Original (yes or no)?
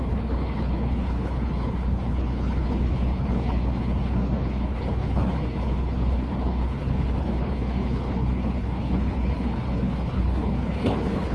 no